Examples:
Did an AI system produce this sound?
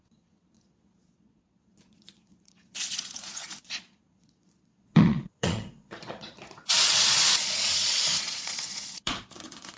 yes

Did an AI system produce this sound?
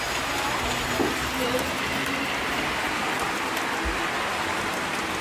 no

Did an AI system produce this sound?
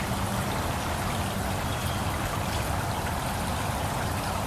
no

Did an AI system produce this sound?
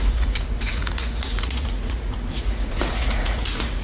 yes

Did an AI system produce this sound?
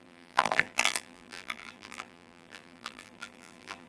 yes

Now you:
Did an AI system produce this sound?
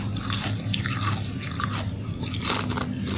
no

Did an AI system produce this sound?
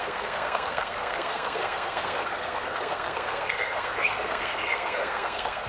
yes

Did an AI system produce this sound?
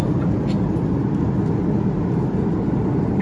no